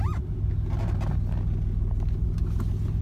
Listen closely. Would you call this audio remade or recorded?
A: recorded